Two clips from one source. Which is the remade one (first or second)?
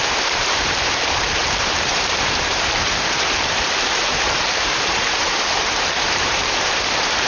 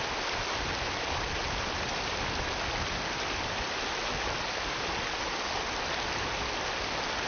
first